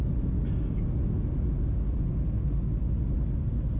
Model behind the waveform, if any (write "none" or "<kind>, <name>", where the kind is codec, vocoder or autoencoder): none